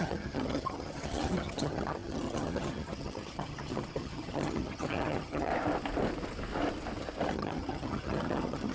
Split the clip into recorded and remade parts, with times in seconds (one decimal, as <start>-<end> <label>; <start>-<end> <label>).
0.0-5.5 remade; 5.5-7.3 recorded; 7.3-8.7 remade

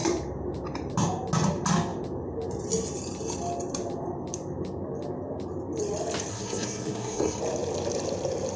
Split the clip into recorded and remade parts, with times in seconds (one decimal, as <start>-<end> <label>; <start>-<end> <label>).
0.0-6.3 recorded; 6.3-7.4 remade; 7.4-8.6 recorded

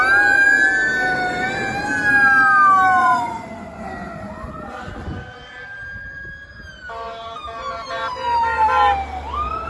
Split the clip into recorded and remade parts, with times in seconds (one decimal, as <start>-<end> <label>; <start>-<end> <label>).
0.0-3.0 recorded; 3.0-4.5 remade; 4.5-9.7 recorded

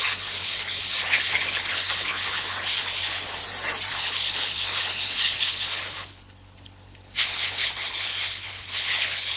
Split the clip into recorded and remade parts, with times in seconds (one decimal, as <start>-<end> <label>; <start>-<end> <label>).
0.0-3.4 remade; 3.4-3.9 recorded; 3.9-9.4 remade

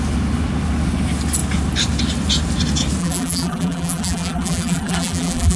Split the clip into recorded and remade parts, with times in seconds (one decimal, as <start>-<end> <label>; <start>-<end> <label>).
0.0-3.0 recorded; 3.0-5.6 remade

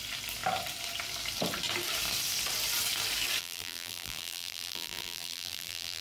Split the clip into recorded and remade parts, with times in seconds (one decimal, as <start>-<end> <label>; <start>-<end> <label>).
0.0-3.4 recorded; 3.4-6.0 remade